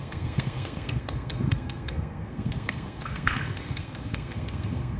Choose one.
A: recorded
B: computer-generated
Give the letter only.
B